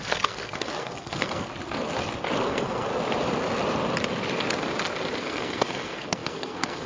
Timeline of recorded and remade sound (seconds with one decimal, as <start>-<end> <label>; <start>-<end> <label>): 0.0-1.5 remade; 1.5-2.4 recorded; 2.4-2.9 remade; 2.9-5.2 recorded; 5.2-6.9 remade